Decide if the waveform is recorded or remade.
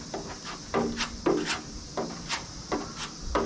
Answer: recorded